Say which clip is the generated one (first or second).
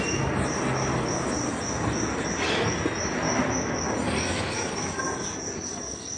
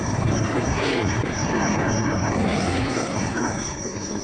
second